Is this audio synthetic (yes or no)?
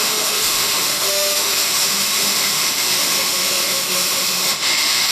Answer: yes